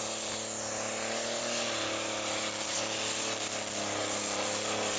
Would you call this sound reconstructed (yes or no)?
no